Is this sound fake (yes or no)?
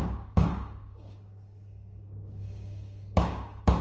yes